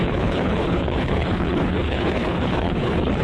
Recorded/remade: remade